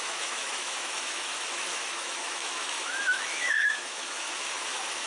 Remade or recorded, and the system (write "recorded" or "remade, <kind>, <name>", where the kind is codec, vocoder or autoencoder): remade, autoencoder, DAC-VAE